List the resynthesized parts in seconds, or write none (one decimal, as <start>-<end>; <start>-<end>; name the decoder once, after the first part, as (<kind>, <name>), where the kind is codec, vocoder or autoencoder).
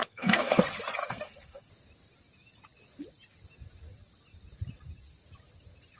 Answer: 0.0-0.6 (codec, SNAC); 1.0-1.7